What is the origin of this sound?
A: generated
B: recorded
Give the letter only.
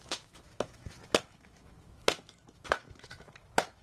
A